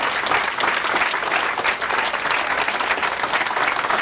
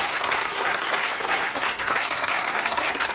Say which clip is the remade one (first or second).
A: second